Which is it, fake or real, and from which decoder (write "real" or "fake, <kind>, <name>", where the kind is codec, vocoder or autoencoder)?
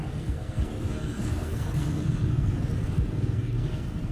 fake, codec, SNAC